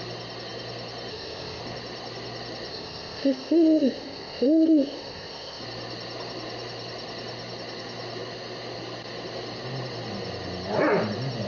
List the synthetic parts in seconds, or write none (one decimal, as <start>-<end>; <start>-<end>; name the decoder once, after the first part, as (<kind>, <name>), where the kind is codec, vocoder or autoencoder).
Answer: 1.1-1.6 (codec, ZipCodec); 2.7-5.6